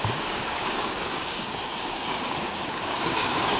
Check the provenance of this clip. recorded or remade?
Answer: remade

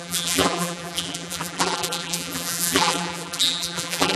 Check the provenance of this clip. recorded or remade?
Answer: remade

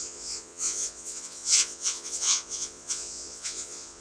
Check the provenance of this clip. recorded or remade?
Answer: remade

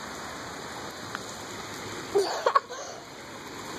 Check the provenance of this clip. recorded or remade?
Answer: recorded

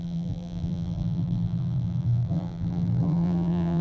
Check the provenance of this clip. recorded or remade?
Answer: remade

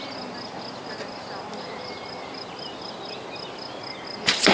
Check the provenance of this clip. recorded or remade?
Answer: recorded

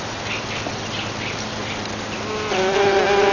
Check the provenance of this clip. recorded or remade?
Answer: recorded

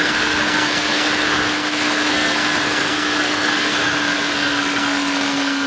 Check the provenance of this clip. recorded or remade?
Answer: remade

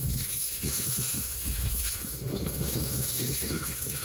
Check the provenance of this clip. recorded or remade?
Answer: remade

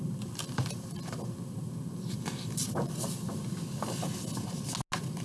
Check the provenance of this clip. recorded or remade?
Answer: recorded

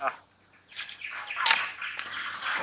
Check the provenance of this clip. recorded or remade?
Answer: recorded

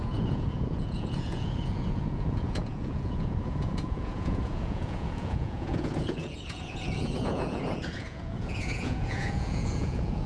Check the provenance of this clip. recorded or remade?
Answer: remade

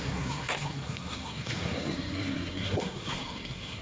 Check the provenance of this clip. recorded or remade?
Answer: remade